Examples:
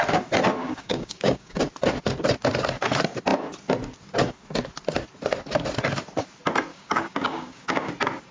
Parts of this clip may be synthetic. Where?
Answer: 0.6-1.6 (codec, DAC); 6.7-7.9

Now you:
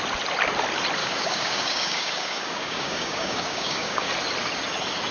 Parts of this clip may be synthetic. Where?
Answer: 1.0-4.1 (codec, DAC)

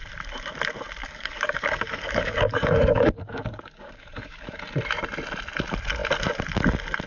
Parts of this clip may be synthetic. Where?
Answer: 1.0-4.6 (codec, DAC)

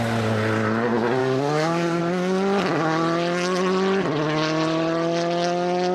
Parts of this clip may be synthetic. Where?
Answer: 1.2-2.0 (codec, DAC)

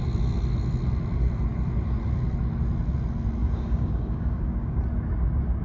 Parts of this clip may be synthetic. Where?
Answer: 3.4-4.8 (codec, DAC)

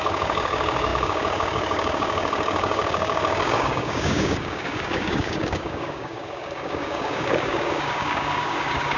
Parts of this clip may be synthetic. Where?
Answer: 0.0-9.0 (codec, DAC)

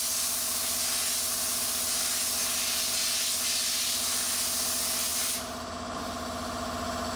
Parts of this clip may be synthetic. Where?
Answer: none